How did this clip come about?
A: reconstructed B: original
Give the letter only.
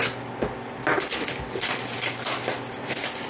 B